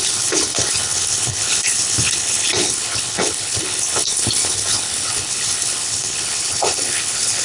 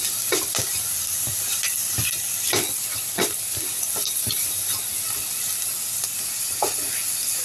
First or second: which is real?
second